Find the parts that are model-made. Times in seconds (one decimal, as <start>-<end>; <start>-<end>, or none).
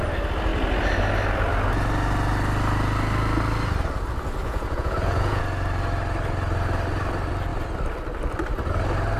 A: 4.4-5.4